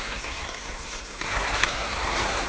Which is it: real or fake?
fake